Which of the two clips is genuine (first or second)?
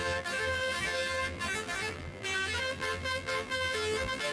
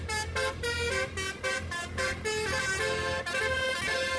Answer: second